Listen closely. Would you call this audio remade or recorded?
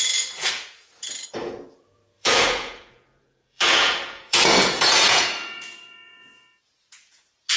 remade